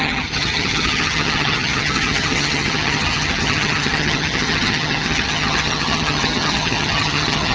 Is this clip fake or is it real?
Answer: fake